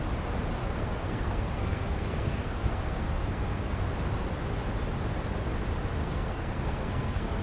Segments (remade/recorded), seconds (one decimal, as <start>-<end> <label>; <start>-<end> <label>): 0.0-0.6 recorded; 0.6-3.8 remade; 3.8-6.0 recorded; 6.0-7.4 remade

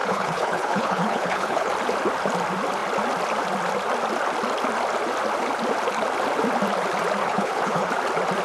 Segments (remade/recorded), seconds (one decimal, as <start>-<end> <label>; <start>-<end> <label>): 0.0-1.7 remade; 1.7-7.2 recorded; 7.2-7.9 remade; 7.9-8.4 recorded

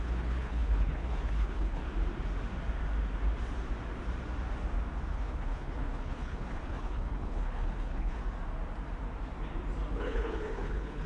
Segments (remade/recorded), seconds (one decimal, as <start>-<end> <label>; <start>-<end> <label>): 0.0-1.8 remade; 1.8-5.1 recorded; 5.1-8.2 remade; 8.2-9.9 recorded; 9.9-11.1 remade